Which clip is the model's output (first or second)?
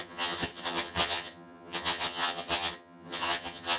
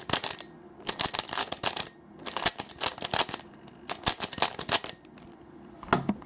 first